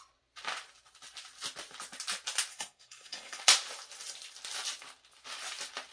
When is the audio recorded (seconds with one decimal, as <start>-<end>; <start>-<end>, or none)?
0.0-2.5; 3.4-5.9